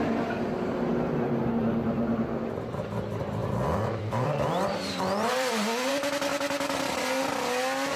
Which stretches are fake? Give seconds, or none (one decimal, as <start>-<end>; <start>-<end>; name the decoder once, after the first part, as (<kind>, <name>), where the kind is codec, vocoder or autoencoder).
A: 3.4-5.9 (vocoder, BigVGAN v2)